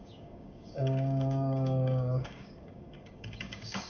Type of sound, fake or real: fake